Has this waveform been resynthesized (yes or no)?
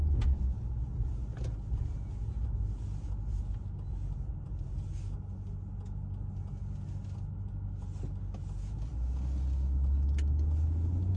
no